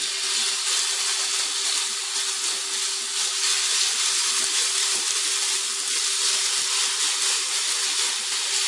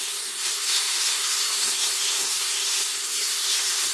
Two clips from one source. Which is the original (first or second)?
first